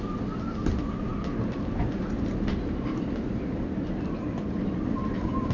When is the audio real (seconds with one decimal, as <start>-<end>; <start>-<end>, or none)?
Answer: 0.0-5.5